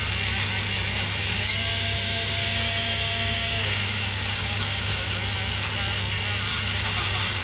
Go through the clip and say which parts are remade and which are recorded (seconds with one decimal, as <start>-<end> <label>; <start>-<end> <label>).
0.0-0.9 recorded; 0.9-5.1 remade; 5.1-6.5 recorded; 6.5-7.4 remade